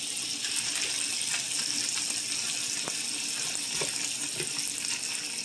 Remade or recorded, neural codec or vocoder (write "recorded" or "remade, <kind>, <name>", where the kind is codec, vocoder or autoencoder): recorded